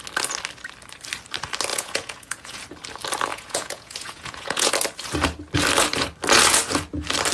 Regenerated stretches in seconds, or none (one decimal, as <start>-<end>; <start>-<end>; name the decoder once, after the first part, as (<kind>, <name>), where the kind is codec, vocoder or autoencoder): 1.7-2.6 (vocoder, Vocos); 3.3-4.7